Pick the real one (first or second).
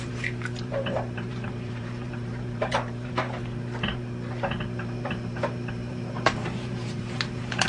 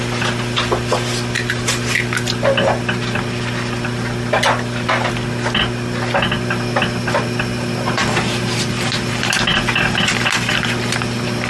second